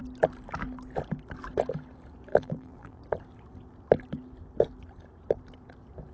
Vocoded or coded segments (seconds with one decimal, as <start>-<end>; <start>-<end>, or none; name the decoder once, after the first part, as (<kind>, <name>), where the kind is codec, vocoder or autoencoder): 2.3-3.0 (vocoder, BigVGAN v2)